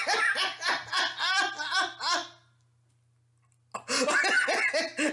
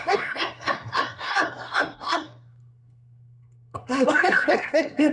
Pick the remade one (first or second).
second